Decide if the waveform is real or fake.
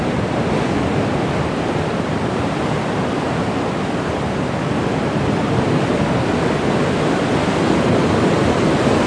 real